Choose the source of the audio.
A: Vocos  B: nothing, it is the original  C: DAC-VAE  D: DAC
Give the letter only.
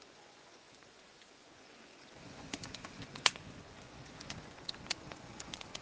A